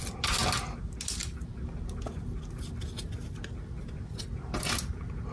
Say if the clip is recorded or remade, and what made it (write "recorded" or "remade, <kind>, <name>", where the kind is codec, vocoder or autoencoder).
recorded